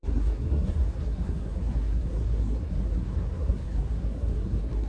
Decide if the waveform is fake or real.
fake